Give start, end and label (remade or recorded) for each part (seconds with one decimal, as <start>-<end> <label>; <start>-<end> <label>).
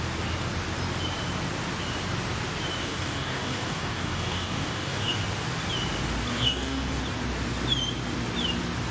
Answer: 0.0-2.8 recorded; 2.8-5.2 remade; 5.2-6.3 recorded; 6.3-7.0 remade; 7.0-8.9 recorded